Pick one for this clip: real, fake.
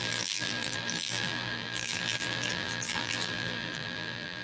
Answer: fake